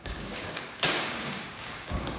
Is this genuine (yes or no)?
no